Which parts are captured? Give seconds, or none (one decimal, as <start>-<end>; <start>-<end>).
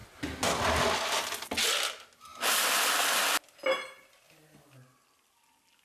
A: 0.0-5.8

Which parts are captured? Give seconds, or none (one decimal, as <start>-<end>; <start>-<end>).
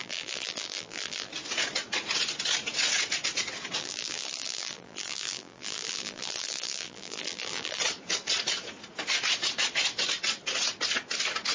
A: 1.3-3.8; 7.8-11.5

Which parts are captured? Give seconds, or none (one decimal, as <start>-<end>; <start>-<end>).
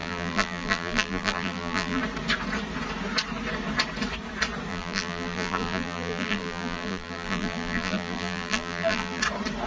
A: 2.0-4.7; 9.2-9.7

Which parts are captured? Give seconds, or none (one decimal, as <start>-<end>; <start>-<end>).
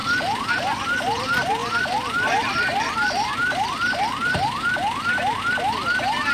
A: 0.5-1.6; 5.4-6.3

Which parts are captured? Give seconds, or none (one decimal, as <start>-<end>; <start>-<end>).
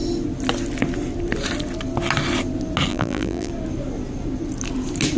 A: 0.0-2.9; 3.5-5.2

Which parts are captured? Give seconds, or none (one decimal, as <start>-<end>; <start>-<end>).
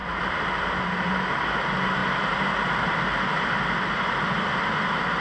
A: 0.0-5.2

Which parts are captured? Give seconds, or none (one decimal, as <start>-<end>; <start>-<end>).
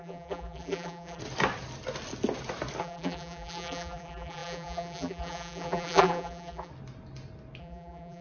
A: 1.2-2.8; 6.7-7.6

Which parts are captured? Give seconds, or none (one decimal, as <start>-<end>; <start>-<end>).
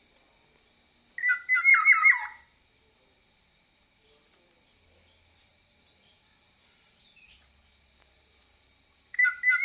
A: 0.0-5.5; 9.2-9.6